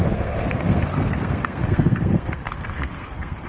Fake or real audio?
fake